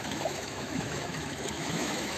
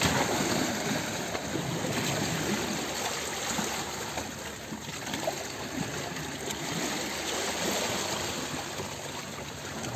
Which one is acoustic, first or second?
second